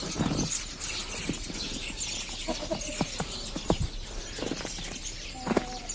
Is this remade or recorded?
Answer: recorded